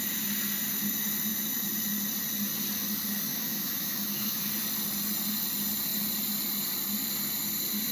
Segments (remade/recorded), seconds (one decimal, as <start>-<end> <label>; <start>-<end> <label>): 0.0-3.3 recorded; 3.3-4.5 remade; 4.5-7.9 recorded